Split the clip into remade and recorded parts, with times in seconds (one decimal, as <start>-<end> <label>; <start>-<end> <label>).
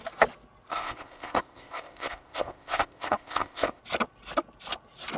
0.0-0.7 recorded; 0.7-3.8 remade; 3.8-5.2 recorded